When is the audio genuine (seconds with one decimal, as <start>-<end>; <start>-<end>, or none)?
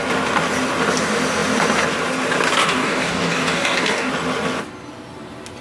0.0-2.6; 4.1-5.6